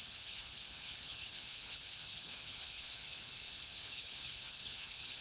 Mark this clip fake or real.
fake